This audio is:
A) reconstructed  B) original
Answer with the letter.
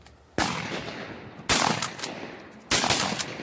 B